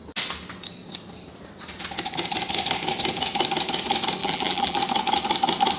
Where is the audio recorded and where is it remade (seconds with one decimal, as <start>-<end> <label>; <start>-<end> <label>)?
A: 0.0-4.2 recorded; 4.2-4.8 remade; 4.8-5.8 recorded